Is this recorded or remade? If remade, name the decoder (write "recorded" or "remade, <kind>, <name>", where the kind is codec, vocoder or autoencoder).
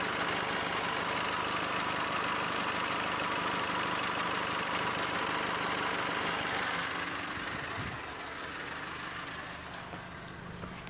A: recorded